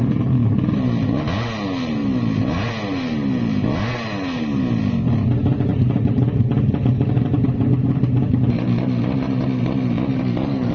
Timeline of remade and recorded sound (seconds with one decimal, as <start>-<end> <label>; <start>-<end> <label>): 0.0-10.7 recorded